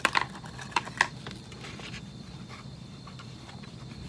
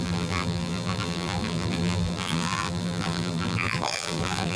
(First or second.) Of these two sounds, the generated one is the second